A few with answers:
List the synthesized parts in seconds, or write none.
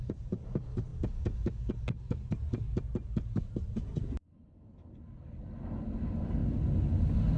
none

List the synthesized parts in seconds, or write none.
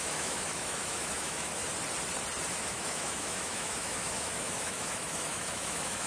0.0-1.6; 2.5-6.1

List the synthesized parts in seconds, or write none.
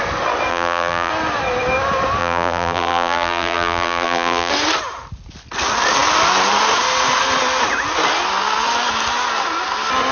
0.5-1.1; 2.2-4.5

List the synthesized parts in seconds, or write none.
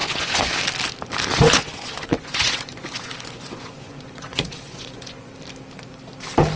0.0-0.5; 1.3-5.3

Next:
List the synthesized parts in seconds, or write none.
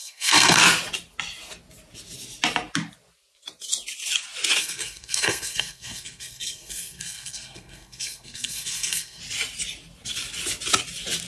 0.0-0.6; 4.6-9.2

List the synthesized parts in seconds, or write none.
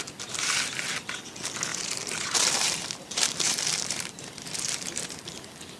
1.7-5.2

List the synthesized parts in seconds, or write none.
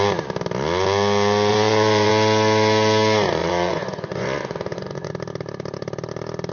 1.5-2.1; 3.4-5.1